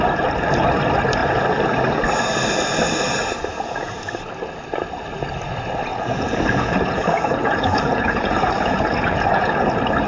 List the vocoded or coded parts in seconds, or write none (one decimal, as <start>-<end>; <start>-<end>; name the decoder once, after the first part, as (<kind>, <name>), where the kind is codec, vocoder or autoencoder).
3.5-4.1 (vocoder, Vocos); 5.9-9.7